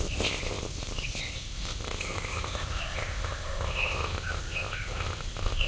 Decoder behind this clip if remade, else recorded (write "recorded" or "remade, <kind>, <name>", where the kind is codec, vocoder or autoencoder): remade, codec, ZipCodec